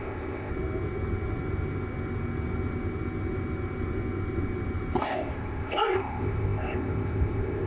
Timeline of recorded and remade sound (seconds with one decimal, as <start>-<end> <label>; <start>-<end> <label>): 0.0-0.5 remade; 0.5-5.0 recorded; 5.0-7.7 remade

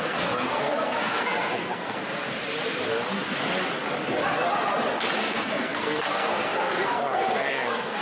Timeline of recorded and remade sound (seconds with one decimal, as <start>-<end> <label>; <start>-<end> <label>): 0.0-2.0 remade; 2.0-5.2 recorded; 5.2-8.0 remade

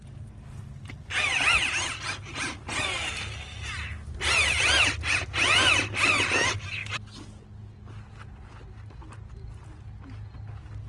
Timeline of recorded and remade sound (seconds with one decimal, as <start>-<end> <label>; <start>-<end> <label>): 0.0-10.9 recorded

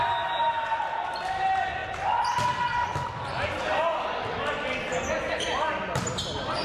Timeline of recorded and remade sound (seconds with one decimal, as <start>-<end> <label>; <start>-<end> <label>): 0.0-6.6 recorded